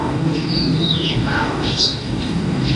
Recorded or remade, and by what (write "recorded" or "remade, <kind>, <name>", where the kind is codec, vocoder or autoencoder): remade, codec, DAC